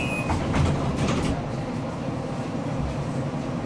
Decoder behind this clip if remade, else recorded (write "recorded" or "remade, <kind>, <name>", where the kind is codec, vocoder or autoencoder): recorded